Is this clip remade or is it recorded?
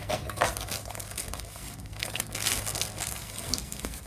remade